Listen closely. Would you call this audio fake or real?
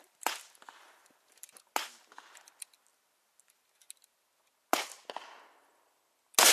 real